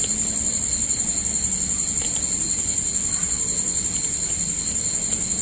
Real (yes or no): yes